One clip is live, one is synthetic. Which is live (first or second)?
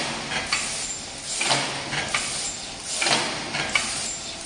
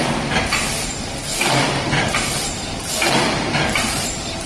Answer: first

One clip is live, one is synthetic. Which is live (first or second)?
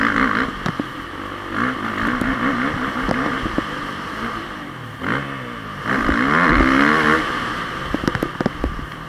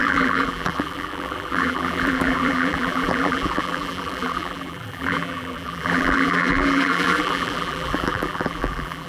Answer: first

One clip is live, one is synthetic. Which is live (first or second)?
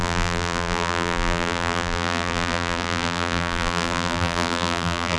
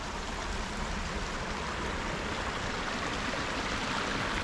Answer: second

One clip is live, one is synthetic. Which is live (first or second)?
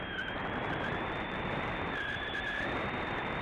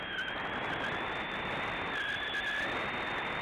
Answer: second